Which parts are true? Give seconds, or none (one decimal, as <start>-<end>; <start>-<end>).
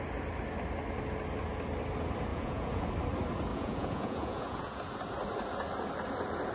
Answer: 0.0-2.3; 2.9-3.5; 4.8-6.5